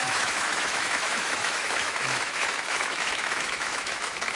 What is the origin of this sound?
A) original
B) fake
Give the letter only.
B